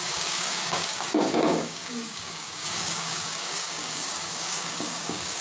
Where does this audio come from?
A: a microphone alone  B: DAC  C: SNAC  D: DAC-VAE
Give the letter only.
B